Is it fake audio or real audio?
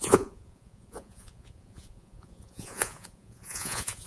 fake